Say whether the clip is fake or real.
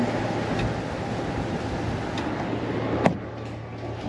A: real